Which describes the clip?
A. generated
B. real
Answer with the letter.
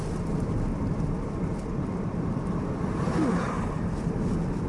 B